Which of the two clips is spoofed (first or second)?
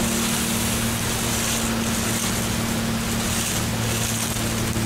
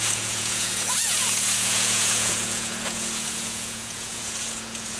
second